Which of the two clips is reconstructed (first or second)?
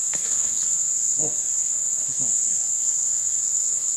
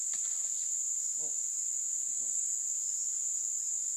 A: first